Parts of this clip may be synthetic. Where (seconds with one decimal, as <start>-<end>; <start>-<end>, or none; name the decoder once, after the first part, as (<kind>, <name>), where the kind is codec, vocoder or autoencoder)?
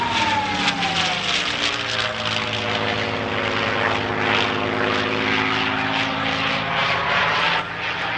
6.8-7.4 (vocoder, BigVGAN v2)